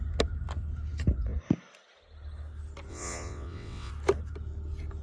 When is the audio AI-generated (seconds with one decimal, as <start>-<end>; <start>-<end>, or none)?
2.9-3.9